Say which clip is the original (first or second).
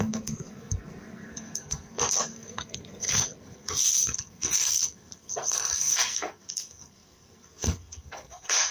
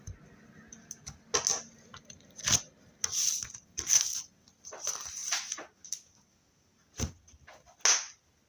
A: second